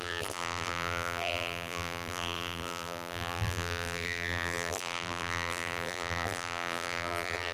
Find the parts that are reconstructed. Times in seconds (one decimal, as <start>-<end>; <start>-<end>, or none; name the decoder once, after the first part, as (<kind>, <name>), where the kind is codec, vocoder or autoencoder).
0.0-7.5 (vocoder, BigVGAN v2)